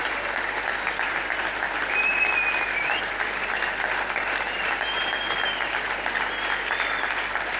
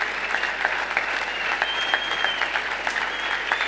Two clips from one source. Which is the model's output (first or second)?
first